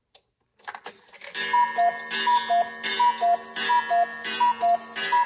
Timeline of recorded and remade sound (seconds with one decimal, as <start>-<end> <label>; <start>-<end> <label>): 0.0-5.3 recorded